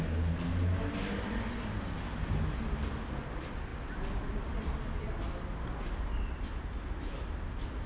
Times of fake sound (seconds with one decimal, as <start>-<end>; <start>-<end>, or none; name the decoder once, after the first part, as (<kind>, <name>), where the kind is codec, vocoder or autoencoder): none